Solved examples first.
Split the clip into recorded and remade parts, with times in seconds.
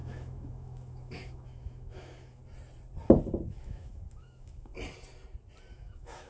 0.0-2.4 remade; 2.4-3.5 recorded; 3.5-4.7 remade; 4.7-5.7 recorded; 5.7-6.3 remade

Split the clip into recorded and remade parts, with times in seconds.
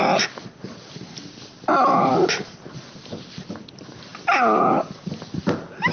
0.0-5.9 recorded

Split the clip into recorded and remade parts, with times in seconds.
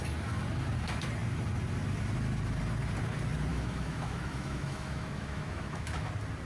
0.0-3.5 recorded; 3.5-6.1 remade; 6.1-6.5 recorded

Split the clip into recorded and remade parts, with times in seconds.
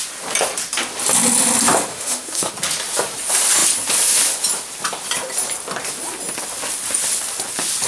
0.0-1.9 recorded; 1.9-2.5 remade; 2.5-7.9 recorded